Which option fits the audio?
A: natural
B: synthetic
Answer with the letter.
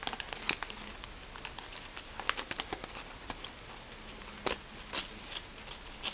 A